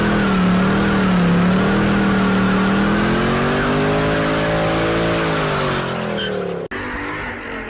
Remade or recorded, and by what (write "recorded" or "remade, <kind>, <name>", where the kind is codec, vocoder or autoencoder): recorded